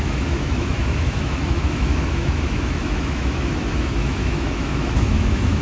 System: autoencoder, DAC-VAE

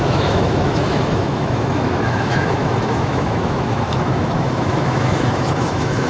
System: autoencoder, DAC-VAE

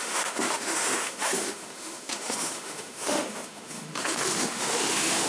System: autoencoder, DAC-VAE